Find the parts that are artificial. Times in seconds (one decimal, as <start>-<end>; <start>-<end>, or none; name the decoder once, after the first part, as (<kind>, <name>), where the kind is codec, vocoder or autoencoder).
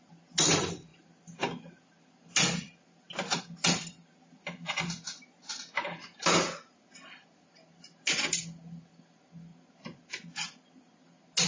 none